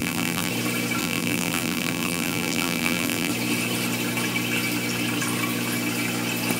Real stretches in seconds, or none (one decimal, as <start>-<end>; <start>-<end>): 0.5-1.0; 3.3-6.6